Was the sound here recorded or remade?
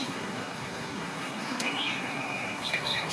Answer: remade